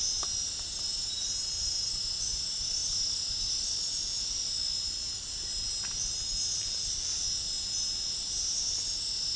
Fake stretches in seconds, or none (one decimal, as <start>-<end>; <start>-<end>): none